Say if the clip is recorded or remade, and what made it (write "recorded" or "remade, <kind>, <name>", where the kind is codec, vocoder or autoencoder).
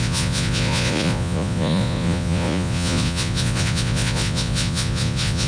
remade, vocoder, Vocos